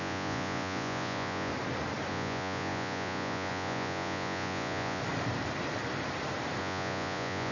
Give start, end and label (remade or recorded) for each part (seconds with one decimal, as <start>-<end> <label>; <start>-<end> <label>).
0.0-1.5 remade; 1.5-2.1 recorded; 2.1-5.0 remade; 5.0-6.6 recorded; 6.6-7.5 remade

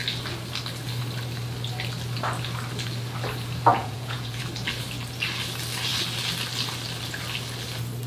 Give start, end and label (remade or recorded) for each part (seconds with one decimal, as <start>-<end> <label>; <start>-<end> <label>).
0.0-3.7 recorded; 3.7-4.4 remade; 4.4-8.1 recorded

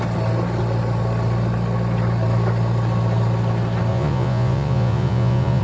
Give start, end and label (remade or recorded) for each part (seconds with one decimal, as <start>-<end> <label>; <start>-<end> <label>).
0.0-3.9 recorded; 3.9-5.6 remade

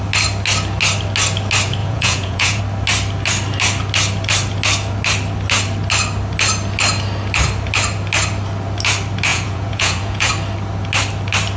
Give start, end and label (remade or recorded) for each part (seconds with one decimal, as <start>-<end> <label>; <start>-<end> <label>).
0.0-1.8 recorded; 1.8-2.6 remade; 2.6-9.3 recorded; 9.3-10.3 remade; 10.3-11.6 recorded

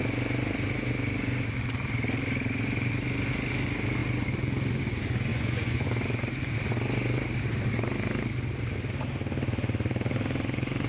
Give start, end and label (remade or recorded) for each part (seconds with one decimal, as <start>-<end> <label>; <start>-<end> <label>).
0.0-5.3 recorded; 5.3-5.9 remade; 5.9-10.9 recorded

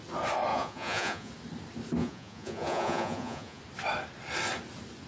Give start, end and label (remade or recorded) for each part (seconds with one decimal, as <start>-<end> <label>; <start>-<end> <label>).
0.0-0.5 recorded; 0.5-1.3 remade; 1.3-2.0 recorded; 2.0-3.6 remade; 3.6-5.1 recorded

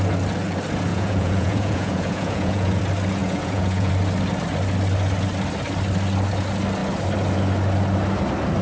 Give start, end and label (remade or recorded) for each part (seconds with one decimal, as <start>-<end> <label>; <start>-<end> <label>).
0.0-0.9 recorded; 0.9-2.8 remade; 2.8-3.2 recorded; 3.2-3.9 remade; 3.9-8.6 recorded